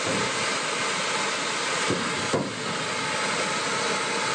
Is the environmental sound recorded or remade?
recorded